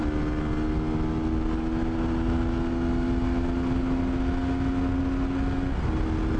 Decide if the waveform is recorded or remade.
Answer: recorded